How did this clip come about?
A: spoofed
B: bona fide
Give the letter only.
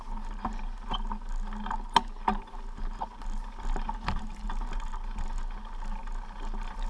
B